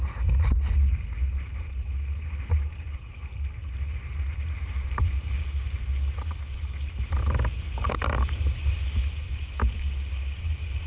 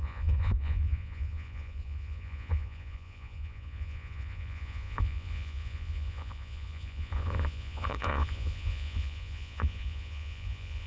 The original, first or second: first